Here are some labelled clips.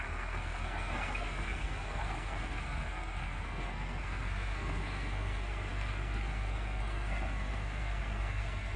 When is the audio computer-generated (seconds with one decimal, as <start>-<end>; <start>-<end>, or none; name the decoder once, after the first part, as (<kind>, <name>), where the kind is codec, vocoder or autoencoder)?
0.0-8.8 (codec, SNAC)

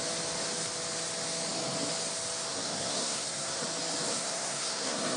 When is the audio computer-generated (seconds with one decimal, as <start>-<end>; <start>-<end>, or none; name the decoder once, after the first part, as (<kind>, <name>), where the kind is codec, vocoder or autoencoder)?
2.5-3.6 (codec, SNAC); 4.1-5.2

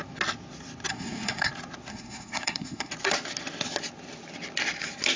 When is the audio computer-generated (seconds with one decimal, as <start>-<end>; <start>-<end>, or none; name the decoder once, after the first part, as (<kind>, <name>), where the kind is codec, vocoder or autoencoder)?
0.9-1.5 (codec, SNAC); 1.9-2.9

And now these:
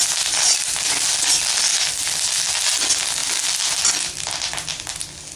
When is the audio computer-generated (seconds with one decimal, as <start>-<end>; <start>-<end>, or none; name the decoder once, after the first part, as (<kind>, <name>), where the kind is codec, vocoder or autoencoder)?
none

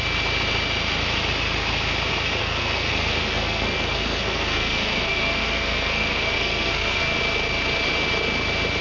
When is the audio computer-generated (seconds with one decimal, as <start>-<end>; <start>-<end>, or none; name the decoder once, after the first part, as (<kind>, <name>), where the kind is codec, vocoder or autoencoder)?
2.4-7.2 (codec, SNAC)

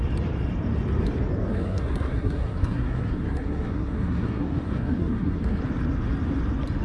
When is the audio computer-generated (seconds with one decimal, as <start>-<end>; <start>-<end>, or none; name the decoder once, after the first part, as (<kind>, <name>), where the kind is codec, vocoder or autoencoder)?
1.5-5.6 (codec, SNAC)

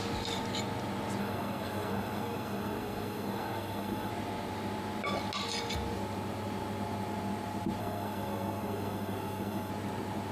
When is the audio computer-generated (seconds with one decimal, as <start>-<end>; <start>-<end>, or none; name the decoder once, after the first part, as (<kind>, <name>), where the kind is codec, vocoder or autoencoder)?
1.2-4.1 (codec, SNAC); 7.8-9.7